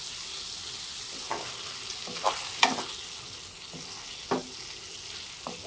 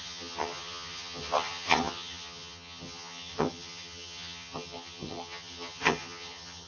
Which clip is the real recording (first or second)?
first